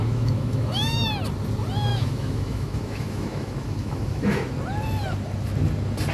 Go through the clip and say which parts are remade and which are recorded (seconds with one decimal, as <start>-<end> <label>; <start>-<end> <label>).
0.0-1.1 remade; 1.1-1.9 recorded; 1.9-4.5 remade; 4.5-6.1 recorded